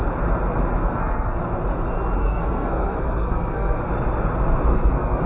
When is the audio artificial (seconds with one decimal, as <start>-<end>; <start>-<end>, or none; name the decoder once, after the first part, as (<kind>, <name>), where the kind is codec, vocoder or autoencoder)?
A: 0.8-1.4 (codec, SNAC); 2.2-3.9; 4.7-5.3